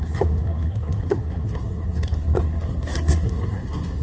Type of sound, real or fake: fake